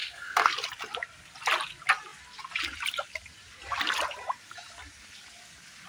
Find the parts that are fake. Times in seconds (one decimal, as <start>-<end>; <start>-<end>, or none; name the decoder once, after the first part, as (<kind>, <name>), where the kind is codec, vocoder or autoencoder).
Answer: 0.0-0.5 (codec, SNAC)